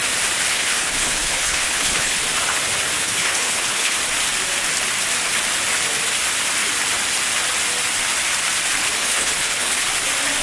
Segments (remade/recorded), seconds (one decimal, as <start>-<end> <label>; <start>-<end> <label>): 0.0-0.5 recorded; 0.5-2.2 remade; 2.2-3.0 recorded; 3.0-4.0 remade; 4.0-9.0 recorded; 9.0-9.8 remade; 9.8-10.4 recorded